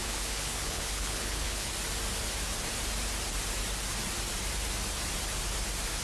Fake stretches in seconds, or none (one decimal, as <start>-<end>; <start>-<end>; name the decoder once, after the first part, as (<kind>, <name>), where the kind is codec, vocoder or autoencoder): 0.0-1.7 (codec, HILCodec)